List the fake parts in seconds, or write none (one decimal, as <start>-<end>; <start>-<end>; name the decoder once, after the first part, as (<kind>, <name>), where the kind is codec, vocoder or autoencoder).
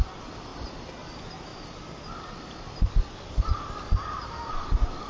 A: none